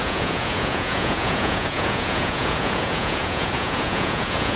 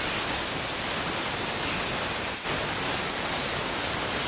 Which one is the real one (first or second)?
second